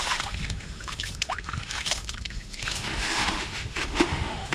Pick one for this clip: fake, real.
fake